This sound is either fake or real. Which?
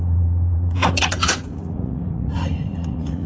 fake